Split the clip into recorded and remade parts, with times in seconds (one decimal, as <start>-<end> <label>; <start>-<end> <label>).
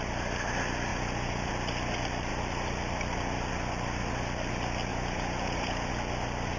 0.0-0.9 recorded; 0.9-1.5 remade; 1.5-4.9 recorded; 4.9-5.9 remade; 5.9-6.6 recorded